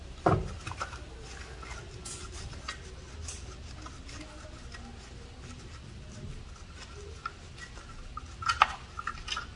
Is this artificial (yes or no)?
no